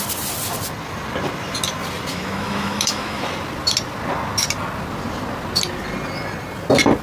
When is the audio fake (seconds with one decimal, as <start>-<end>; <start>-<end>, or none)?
2.1-3.2